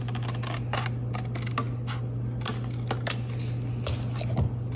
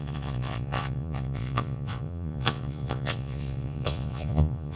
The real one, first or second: first